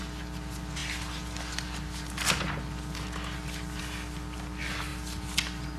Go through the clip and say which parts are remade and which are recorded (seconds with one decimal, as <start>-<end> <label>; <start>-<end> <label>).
0.0-5.8 recorded